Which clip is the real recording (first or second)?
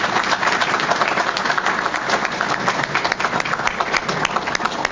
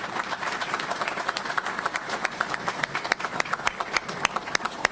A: first